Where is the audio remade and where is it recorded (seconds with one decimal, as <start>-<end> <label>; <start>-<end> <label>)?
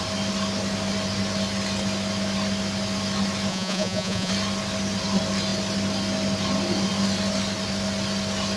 0.0-3.5 recorded; 3.5-4.3 remade; 4.3-8.6 recorded